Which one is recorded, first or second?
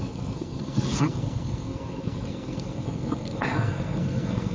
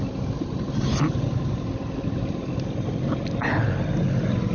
second